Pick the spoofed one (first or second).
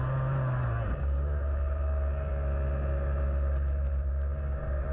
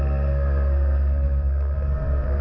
second